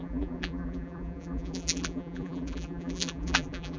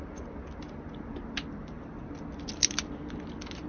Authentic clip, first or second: second